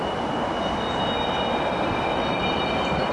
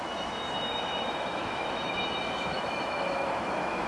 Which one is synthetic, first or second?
second